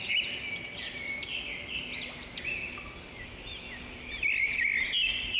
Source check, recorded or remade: recorded